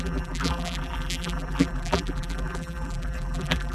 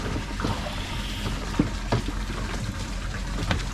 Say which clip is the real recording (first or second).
second